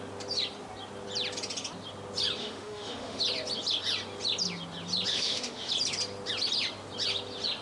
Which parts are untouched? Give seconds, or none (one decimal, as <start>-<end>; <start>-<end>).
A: 0.0-2.4; 3.2-5.1; 5.7-7.6